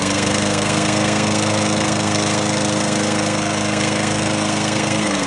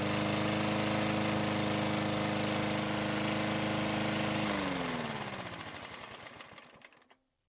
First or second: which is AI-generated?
first